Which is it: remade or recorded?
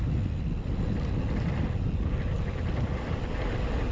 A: recorded